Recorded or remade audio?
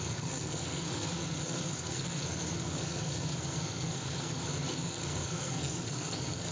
remade